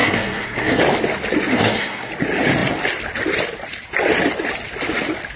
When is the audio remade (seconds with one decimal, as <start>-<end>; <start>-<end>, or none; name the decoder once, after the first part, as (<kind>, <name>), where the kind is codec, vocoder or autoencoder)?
0.0-0.8 (codec, SNAC); 1.5-2.1